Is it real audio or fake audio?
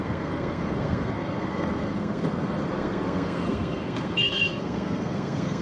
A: fake